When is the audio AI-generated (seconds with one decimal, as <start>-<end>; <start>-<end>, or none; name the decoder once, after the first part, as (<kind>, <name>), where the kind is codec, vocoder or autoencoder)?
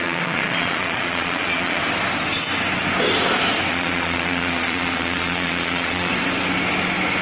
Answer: 0.0-1.8 (vocoder, Vocos); 3.7-6.1